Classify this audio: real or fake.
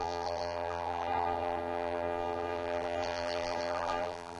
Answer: fake